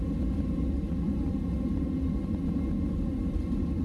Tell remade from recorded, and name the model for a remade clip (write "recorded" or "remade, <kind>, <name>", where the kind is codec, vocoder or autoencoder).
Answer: recorded